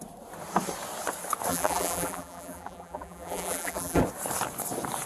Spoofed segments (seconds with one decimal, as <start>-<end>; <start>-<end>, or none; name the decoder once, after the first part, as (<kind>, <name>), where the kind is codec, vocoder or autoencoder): 1.5-4.0 (vocoder, BigVGAN v2)